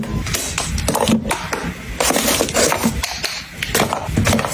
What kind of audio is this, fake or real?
real